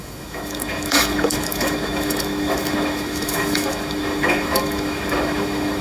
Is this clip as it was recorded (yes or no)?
no